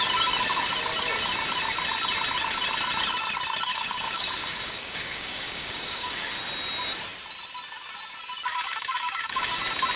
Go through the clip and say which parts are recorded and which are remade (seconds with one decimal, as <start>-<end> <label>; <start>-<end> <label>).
0.0-3.7 recorded; 3.7-6.3 remade; 6.3-8.5 recorded; 8.5-9.6 remade; 9.6-10.0 recorded